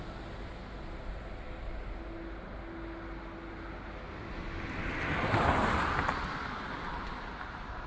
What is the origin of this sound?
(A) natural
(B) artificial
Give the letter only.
A